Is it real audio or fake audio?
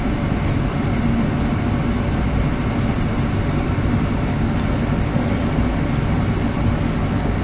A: real